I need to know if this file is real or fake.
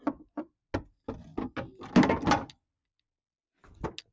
real